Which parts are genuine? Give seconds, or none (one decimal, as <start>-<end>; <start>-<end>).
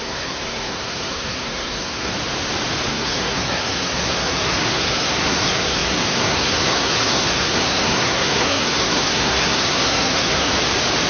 2.1-2.9; 10.5-11.1